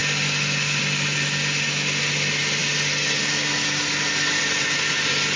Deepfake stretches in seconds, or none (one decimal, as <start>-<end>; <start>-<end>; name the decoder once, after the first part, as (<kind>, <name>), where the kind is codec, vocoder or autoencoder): none